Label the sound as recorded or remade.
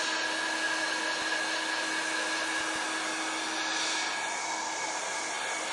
recorded